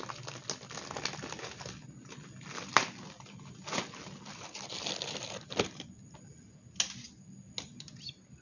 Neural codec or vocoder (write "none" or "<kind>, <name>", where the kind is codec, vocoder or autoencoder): none